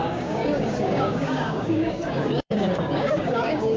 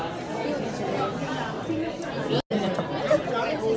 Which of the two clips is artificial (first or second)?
first